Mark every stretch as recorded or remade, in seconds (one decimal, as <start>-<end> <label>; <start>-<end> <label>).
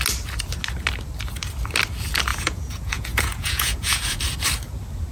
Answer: 0.0-2.3 recorded; 2.3-4.2 remade; 4.2-5.1 recorded